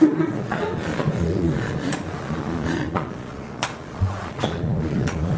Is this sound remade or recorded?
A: remade